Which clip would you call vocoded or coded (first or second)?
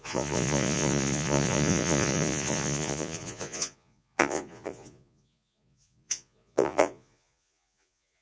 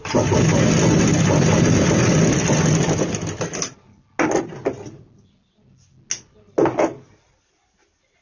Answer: first